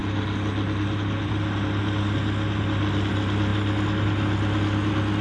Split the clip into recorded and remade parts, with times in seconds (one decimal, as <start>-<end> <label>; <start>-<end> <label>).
0.0-5.2 recorded